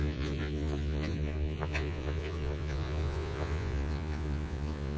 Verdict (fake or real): fake